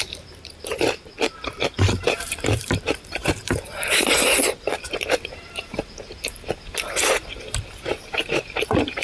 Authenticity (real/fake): fake